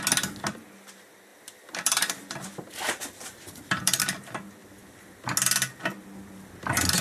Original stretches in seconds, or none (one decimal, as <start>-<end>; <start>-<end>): 0.0-1.3; 4.0-7.0